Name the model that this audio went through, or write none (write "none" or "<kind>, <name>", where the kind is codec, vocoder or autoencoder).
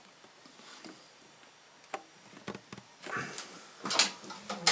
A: none